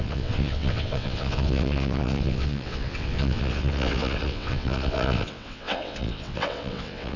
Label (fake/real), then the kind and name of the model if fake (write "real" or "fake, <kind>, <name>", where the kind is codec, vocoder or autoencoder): fake, vocoder, WaveNeXt